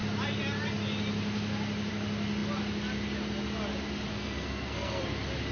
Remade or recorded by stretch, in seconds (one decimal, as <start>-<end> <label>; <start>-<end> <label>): 0.0-4.1 recorded; 4.1-5.0 remade; 5.0-5.5 recorded